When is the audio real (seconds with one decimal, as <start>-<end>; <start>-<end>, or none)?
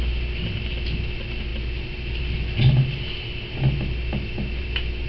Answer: 0.0-5.1